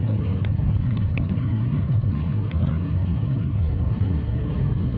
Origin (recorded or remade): remade